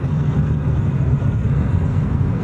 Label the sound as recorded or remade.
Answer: remade